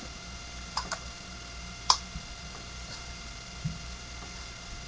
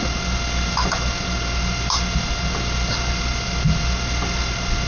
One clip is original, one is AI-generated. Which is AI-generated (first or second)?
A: first